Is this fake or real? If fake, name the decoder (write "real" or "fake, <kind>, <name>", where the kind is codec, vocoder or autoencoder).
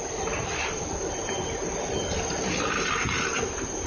real